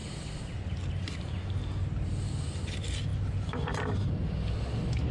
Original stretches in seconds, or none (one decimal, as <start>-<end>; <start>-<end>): 0.0-5.1